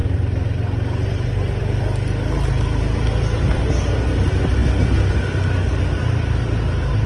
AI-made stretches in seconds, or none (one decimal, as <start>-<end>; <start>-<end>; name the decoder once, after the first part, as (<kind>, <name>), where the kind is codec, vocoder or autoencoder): none